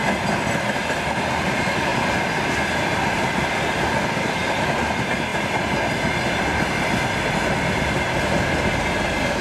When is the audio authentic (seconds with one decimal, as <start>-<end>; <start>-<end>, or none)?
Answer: 0.0-9.4